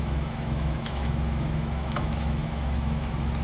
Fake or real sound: fake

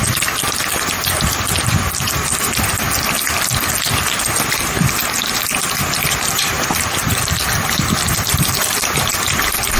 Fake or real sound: real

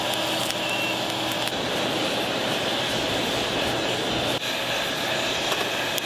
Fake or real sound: real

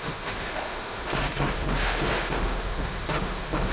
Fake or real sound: fake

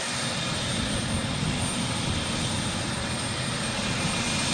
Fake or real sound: real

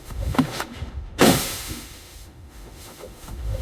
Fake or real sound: fake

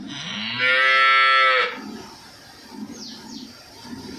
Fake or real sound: real